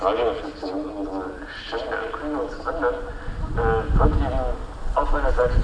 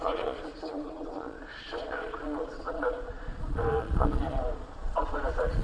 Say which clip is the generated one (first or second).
second